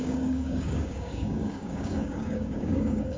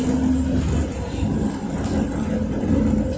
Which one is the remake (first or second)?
first